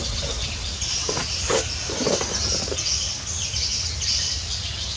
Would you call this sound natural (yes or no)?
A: yes